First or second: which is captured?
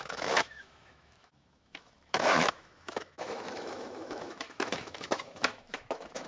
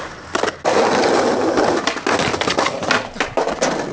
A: second